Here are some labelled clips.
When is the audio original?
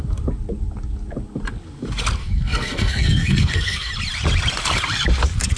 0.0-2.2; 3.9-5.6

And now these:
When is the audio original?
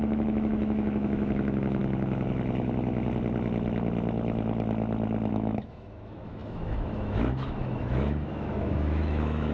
1.8-5.3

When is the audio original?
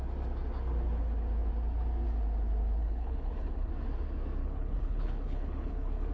0.0-2.8; 3.7-4.4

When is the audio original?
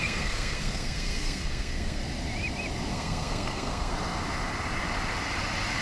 2.0-2.9; 3.9-5.8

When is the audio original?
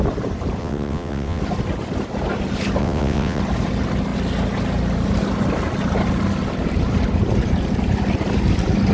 0.0-0.6; 1.4-2.8; 3.4-8.9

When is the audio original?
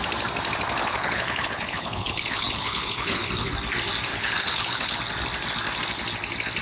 0.0-0.8; 3.3-4.1; 5.0-6.6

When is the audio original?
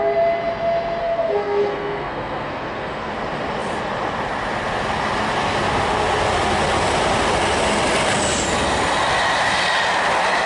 0.0-1.0; 3.1-10.5